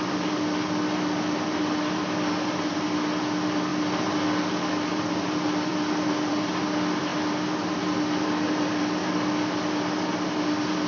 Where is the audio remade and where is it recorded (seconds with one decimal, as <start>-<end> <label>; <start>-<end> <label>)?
0.0-10.9 recorded